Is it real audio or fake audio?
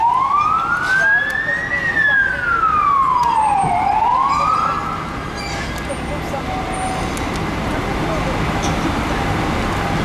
real